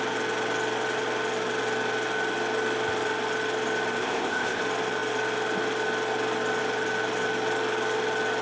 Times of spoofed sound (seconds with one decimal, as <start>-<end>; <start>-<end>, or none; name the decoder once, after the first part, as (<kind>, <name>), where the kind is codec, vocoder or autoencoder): 4.0-4.6 (codec, ZipCodec)